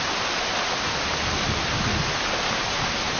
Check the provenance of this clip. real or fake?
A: real